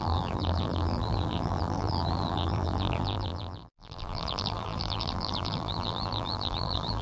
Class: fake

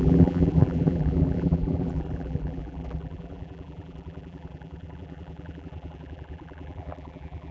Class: fake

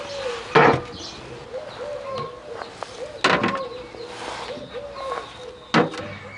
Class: real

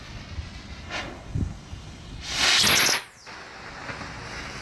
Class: real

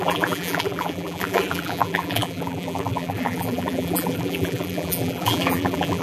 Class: fake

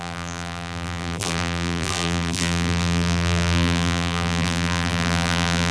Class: fake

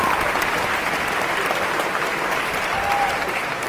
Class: real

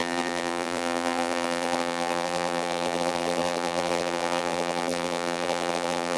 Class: fake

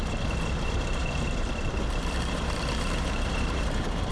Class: fake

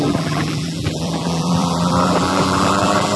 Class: fake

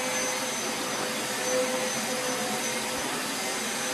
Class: real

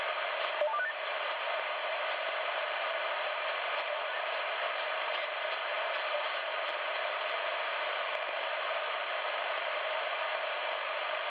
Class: fake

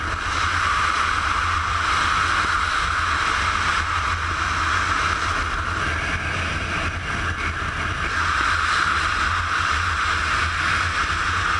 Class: real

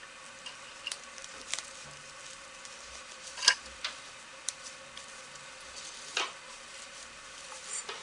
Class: fake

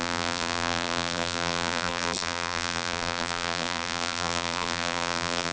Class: fake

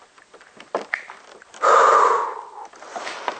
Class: fake